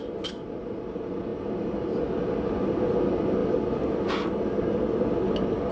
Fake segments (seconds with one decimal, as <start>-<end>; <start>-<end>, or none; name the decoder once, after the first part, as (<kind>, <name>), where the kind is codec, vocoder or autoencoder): 3.4-5.1 (vocoder, BigVGAN v2)

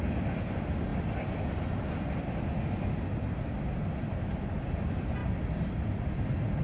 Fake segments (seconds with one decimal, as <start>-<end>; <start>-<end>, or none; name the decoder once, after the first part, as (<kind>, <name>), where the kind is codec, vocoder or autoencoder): 5.2-6.6 (vocoder, BigVGAN v2)

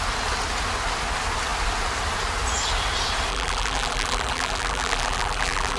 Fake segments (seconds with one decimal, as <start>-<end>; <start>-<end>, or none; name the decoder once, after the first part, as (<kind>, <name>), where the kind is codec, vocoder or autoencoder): 3.3-5.8 (vocoder, BigVGAN v2)

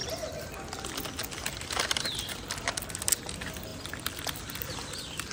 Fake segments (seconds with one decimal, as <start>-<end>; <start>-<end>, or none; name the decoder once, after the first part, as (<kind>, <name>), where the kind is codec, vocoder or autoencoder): 3.7-5.3 (vocoder, BigVGAN v2)

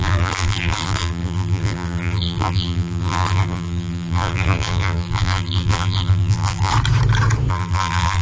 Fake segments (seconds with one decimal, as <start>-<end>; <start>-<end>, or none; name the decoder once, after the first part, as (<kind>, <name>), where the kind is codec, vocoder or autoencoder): 0.0-6.7 (vocoder, BigVGAN v2); 7.5-8.2

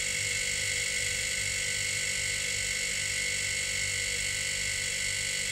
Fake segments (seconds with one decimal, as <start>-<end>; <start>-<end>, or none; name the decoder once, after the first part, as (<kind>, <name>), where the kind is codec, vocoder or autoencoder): 0.6-1.5 (vocoder, BigVGAN v2)

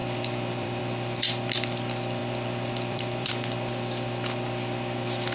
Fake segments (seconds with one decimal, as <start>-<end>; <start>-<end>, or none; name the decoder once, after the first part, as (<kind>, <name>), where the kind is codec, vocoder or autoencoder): 0.0-0.8 (vocoder, BigVGAN v2); 2.2-3.3